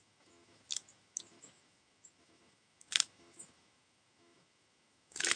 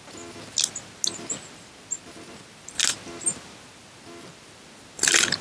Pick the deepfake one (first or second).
first